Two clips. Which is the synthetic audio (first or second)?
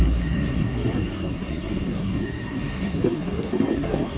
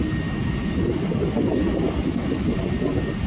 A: first